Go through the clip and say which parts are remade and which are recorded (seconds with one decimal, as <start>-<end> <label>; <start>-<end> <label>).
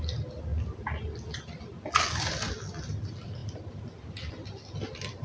0.0-5.2 recorded